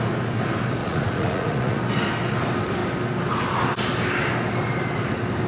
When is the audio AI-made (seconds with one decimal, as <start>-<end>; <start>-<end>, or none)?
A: 0.8-1.8